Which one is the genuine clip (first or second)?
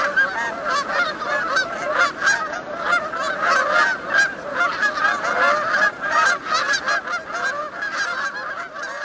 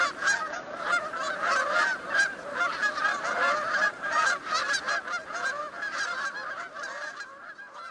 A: first